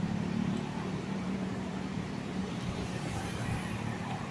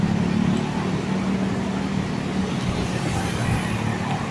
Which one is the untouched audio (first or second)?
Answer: second